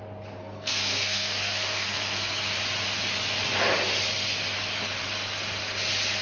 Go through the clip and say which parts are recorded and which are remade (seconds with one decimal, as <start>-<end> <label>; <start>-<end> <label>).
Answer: 0.0-0.4 recorded; 0.4-2.4 remade; 2.4-6.2 recorded